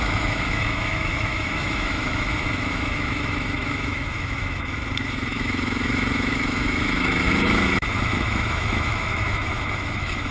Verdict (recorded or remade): remade